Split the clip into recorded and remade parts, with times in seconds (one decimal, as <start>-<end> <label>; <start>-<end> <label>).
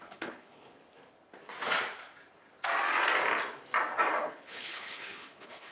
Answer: 0.0-0.8 remade; 0.8-4.2 recorded; 4.2-5.7 remade